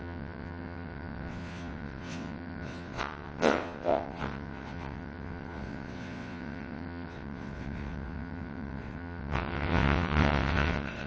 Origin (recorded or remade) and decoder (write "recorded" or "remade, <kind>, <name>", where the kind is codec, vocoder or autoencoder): remade, vocoder, WaveNeXt